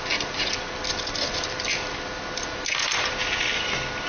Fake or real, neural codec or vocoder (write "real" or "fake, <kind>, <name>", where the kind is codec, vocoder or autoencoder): real